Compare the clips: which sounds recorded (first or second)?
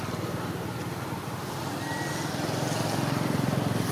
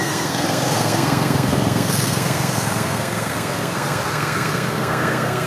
first